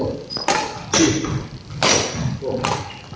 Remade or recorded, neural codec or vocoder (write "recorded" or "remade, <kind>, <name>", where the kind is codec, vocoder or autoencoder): recorded